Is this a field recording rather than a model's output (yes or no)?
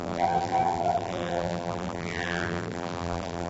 no